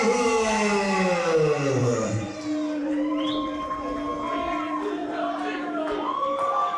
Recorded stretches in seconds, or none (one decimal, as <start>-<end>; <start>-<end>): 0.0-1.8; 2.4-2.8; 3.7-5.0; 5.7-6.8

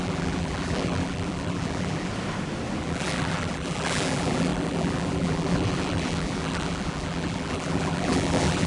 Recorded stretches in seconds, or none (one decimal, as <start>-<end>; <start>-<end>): 2.1-2.8

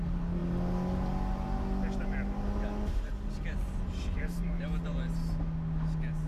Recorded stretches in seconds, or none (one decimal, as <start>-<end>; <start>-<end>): 0.0-6.3